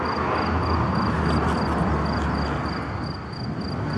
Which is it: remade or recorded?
recorded